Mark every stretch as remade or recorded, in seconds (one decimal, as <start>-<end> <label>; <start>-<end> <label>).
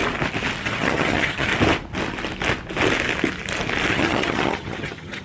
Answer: 0.0-0.6 recorded; 0.6-1.5 remade; 1.5-3.9 recorded; 3.9-5.2 remade